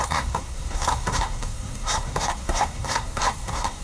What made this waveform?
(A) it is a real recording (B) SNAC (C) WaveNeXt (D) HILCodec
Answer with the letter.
B